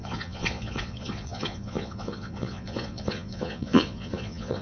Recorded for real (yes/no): no